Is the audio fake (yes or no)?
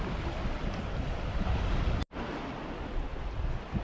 no